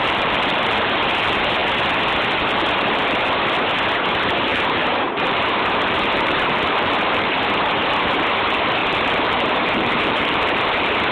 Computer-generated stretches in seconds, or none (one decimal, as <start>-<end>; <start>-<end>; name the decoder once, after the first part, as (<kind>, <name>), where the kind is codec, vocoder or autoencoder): 0.0-1.6 (vocoder, BigVGAN v2); 2.4-3.0; 4.0-11.1